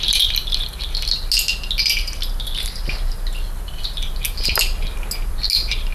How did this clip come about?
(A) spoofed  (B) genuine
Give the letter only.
B